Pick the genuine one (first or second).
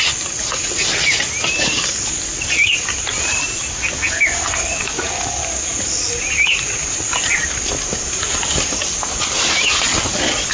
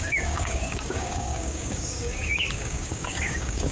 first